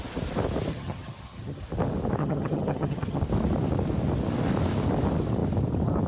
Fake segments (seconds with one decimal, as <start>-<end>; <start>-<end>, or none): 0.7-1.6; 2.2-3.2